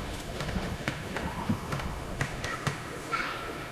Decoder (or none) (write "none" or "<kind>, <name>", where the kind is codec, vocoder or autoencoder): autoencoder, DAC-VAE